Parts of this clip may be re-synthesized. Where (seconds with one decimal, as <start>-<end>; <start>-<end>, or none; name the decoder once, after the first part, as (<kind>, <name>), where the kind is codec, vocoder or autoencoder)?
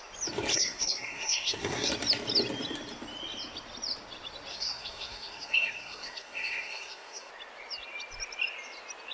0.5-1.9 (codec, SNAC); 4.5-7.3